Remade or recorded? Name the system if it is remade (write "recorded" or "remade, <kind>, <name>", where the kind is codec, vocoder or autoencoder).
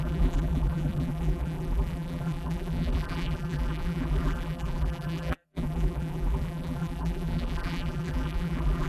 remade, vocoder, BigVGAN v2